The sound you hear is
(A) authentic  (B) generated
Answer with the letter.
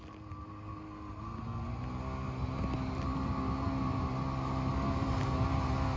A